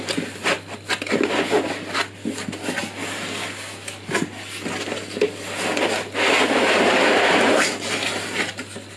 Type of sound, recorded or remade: recorded